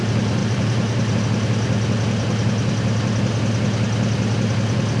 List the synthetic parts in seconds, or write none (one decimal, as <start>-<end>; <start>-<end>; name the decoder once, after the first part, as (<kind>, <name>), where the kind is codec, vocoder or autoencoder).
0.4-1.2 (vocoder, BigVGAN v2)